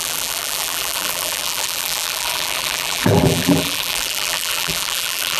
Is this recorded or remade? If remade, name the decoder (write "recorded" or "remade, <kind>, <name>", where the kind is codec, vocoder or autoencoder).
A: remade, vocoder, BigVGAN v2